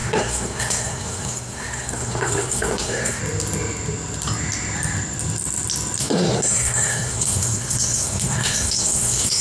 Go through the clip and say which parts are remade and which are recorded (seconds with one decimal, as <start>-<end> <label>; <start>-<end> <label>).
0.0-3.2 remade; 3.2-6.0 recorded; 6.0-9.4 remade